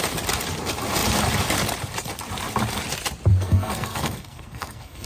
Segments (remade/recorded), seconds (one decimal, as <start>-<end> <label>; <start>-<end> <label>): 0.0-3.3 recorded; 3.3-5.1 remade